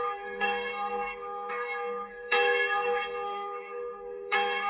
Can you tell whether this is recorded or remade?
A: remade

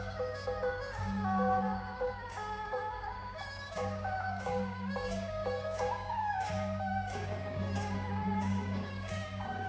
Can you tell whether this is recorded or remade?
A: remade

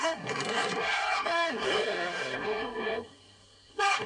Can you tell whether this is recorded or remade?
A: remade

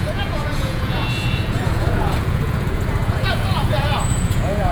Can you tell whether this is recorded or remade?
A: remade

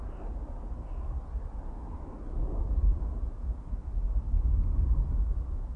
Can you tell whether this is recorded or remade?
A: recorded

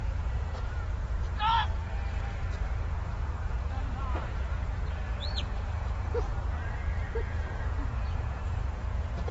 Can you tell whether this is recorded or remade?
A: remade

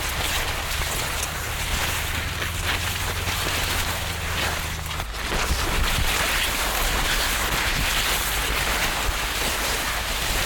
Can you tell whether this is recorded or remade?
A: recorded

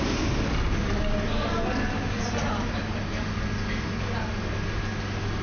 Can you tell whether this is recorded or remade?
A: recorded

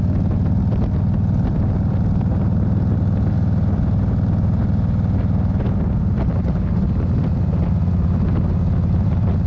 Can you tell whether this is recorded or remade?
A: recorded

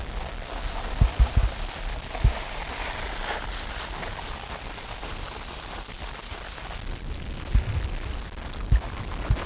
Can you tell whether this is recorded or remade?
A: recorded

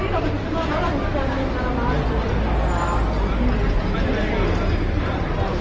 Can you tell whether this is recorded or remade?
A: recorded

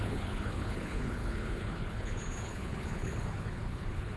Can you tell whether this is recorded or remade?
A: remade